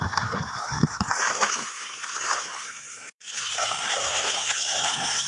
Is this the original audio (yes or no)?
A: no